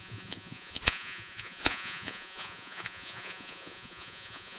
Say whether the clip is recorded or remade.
remade